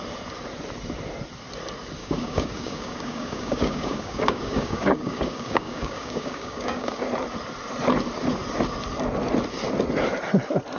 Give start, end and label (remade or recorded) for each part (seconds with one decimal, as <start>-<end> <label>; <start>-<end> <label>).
0.0-2.0 recorded; 2.0-7.0 remade; 7.0-10.8 recorded